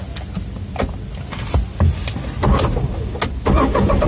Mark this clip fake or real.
real